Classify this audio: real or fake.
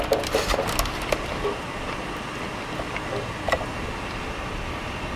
real